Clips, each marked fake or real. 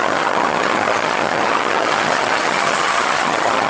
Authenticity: fake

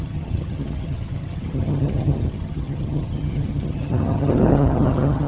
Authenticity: fake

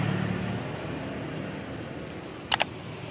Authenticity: real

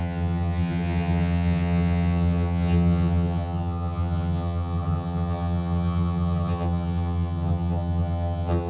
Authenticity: fake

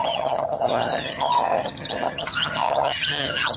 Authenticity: fake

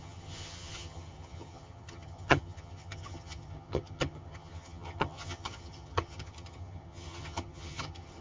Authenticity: fake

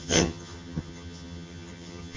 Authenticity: fake